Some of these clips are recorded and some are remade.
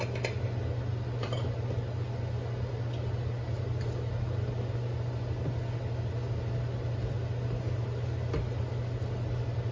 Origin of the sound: recorded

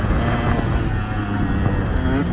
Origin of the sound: recorded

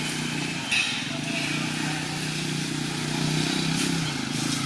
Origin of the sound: recorded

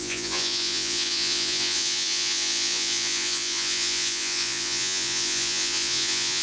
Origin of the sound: remade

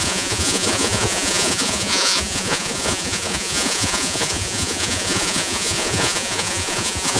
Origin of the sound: remade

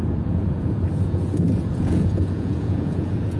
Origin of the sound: remade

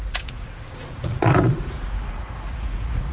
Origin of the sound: remade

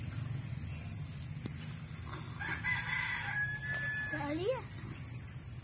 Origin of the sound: recorded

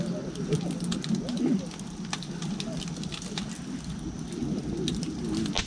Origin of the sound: recorded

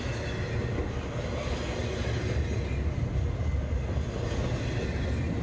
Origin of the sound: recorded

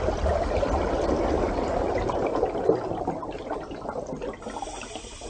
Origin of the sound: recorded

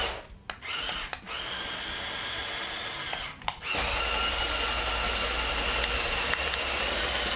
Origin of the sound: recorded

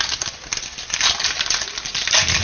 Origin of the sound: recorded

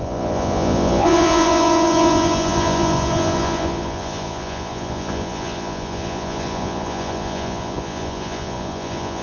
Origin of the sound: remade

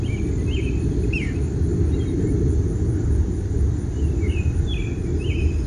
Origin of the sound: recorded